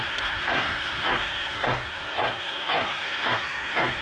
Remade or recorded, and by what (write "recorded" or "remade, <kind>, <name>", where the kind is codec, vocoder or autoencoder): remade, codec, SNAC